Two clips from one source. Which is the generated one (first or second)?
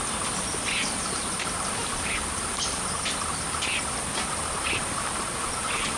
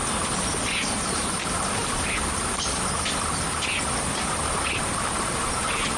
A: first